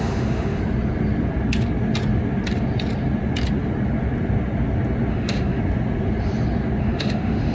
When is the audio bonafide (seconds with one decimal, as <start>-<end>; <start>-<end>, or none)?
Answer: 0.6-5.1; 5.6-6.8